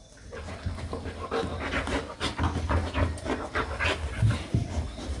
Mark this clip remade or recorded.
recorded